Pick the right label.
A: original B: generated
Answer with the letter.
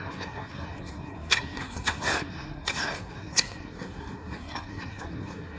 B